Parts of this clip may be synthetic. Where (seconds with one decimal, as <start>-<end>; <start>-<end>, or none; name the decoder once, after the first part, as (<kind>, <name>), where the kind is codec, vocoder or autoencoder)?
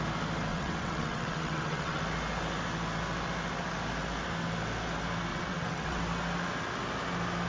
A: 0.5-2.0 (vocoder, WaveNeXt); 5.3-6.0